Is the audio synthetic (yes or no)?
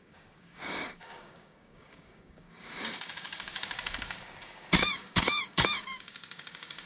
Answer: yes